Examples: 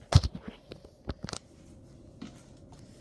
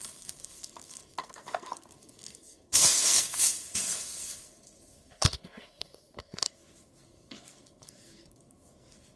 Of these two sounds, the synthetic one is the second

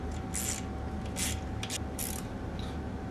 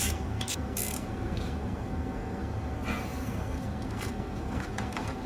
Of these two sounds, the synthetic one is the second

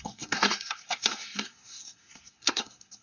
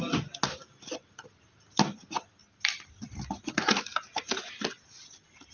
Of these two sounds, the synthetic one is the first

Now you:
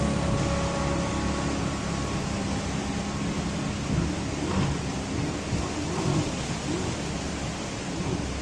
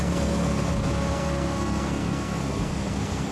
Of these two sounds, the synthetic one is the second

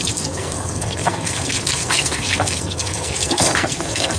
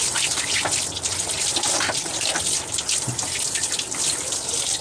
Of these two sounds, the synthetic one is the first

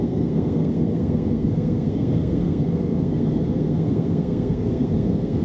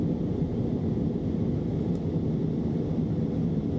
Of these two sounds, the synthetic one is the first